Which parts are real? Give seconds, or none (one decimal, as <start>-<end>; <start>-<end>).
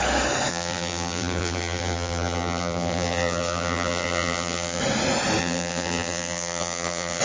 0.0-0.5; 4.8-5.4